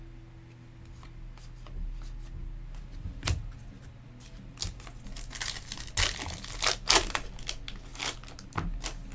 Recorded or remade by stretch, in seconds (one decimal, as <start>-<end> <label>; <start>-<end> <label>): 0.0-9.1 recorded